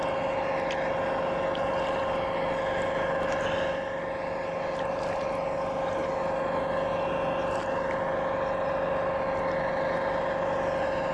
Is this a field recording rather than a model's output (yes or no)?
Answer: yes